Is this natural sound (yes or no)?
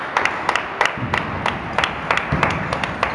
yes